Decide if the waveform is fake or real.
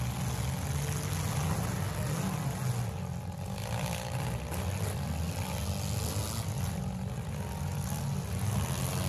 real